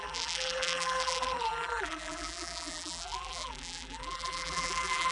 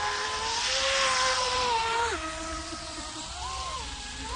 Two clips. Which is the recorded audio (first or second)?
second